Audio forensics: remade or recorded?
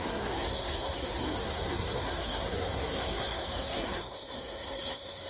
remade